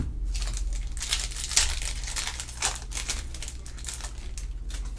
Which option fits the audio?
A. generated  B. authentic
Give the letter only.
B